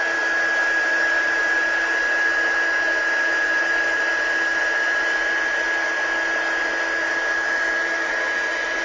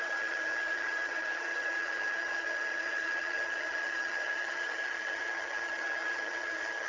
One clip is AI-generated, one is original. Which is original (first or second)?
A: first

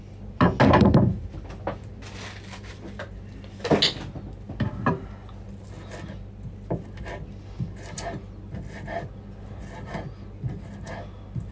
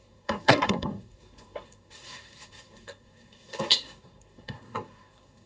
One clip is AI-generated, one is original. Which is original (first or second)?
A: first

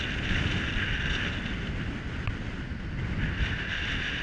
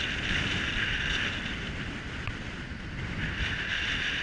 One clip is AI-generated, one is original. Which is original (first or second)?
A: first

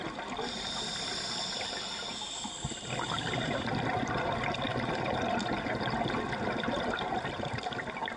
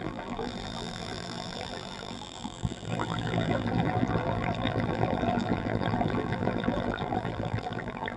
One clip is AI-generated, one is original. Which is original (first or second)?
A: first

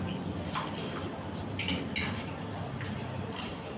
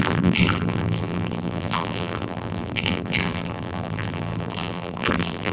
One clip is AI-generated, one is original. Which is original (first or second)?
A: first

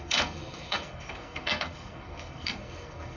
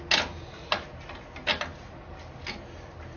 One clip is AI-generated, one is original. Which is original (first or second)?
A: second